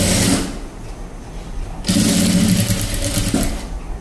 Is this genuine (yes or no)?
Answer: yes